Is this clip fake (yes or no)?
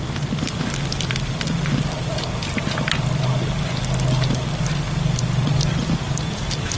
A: no